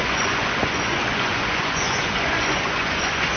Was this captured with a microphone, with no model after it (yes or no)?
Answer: no